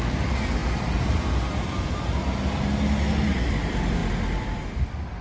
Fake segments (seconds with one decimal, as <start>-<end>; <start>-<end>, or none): none